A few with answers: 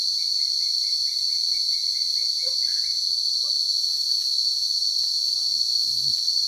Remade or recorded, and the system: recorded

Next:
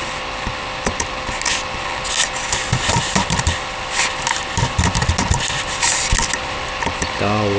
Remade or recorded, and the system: recorded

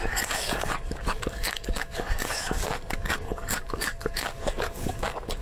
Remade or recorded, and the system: remade, codec, DAC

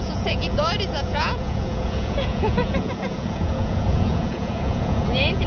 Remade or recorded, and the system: remade, vocoder, Vocos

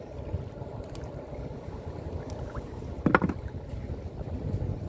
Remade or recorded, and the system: recorded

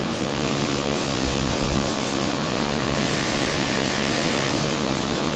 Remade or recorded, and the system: remade, vocoder, WaveNeXt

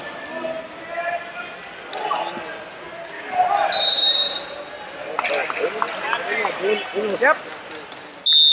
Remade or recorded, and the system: recorded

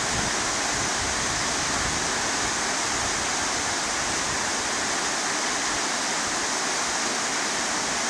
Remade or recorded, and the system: recorded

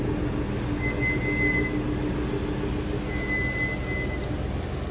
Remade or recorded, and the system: recorded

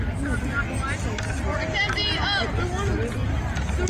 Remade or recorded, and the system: recorded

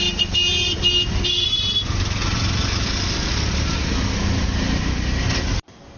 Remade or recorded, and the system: recorded